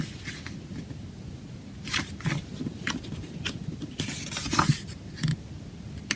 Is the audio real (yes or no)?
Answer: yes